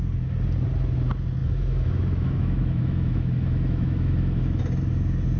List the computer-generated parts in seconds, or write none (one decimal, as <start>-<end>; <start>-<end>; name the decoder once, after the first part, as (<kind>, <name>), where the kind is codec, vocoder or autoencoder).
1.4-4.6 (autoencoder, DAC-VAE)